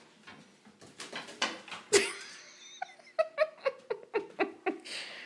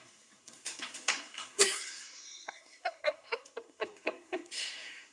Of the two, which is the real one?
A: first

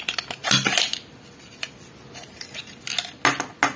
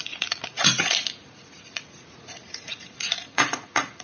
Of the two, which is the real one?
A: first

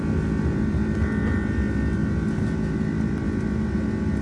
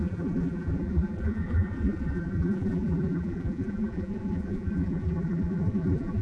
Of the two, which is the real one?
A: first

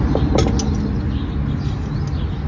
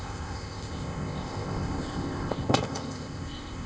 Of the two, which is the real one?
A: first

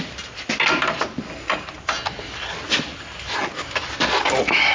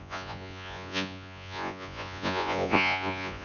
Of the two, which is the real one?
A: first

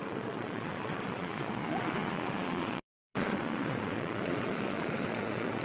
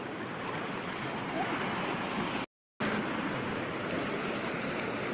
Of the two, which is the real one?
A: second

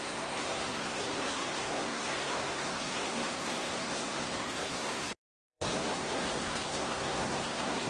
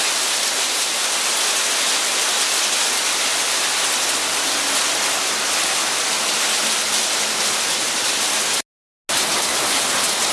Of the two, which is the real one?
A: second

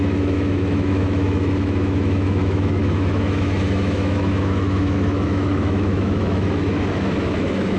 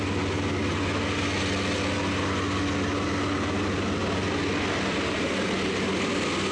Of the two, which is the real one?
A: second